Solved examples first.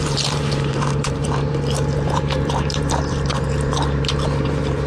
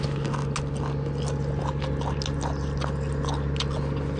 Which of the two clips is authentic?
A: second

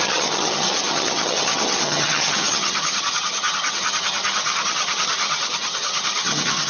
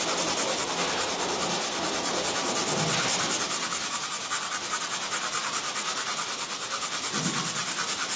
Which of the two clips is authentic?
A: second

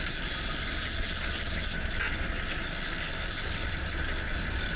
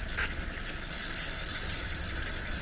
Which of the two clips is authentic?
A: first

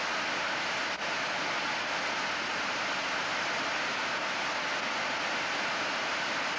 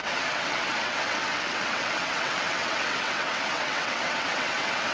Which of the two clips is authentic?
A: first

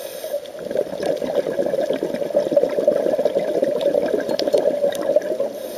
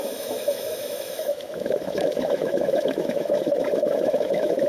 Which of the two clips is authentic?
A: first